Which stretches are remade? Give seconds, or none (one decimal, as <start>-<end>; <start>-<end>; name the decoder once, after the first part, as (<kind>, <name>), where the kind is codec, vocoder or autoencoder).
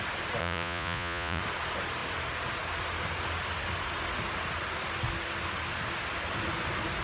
0.4-1.4 (vocoder, Vocos)